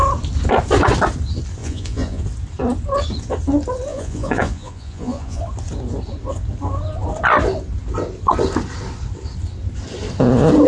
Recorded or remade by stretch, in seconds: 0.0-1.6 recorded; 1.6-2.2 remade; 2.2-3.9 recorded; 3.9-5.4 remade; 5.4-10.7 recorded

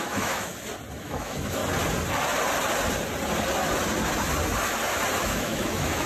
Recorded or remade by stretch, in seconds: 0.0-0.5 remade; 0.5-1.0 recorded; 1.0-1.6 remade; 1.6-5.2 recorded; 5.2-6.1 remade

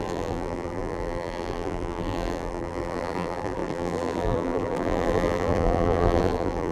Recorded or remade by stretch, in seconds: 0.0-6.7 remade

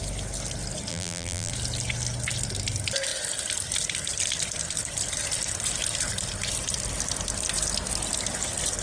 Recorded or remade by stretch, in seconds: 0.0-0.9 recorded; 0.9-1.5 remade; 1.5-8.8 recorded

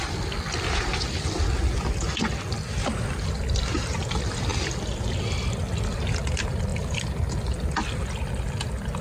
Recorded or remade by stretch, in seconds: 0.0-9.0 recorded

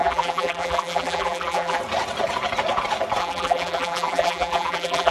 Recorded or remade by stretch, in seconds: 0.0-1.8 remade; 1.8-3.2 recorded; 3.2-5.1 remade